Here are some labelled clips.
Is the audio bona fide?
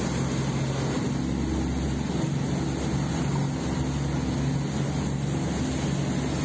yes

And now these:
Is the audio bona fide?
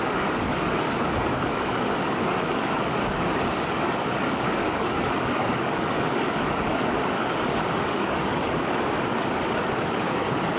no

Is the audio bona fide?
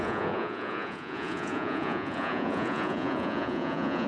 no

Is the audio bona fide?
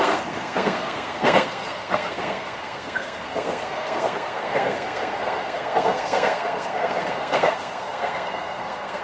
no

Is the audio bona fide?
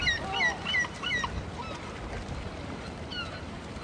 yes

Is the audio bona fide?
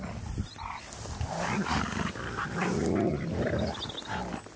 yes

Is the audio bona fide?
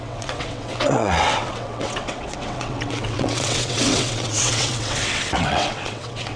no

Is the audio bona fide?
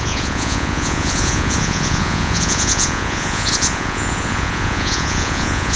no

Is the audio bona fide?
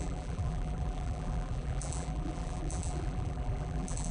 no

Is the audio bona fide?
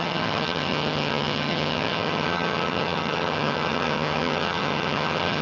no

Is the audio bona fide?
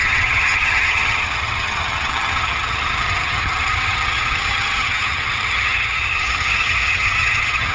no